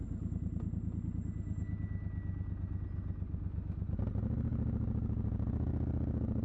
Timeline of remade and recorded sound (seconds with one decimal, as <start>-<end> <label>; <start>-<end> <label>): 0.0-6.4 recorded